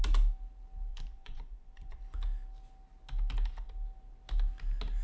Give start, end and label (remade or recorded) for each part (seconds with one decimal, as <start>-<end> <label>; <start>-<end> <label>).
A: 0.0-0.9 recorded; 0.9-2.0 remade; 2.0-5.0 recorded